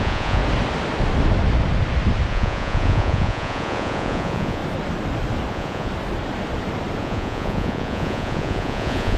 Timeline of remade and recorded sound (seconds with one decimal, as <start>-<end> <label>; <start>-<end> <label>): 0.0-0.4 remade; 0.4-2.3 recorded; 2.3-4.6 remade; 4.6-5.5 recorded; 5.5-5.9 remade; 5.9-7.0 recorded; 7.0-9.2 remade